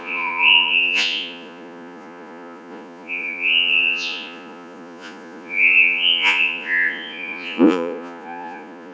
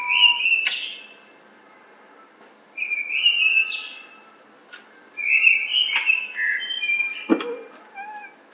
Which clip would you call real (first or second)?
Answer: second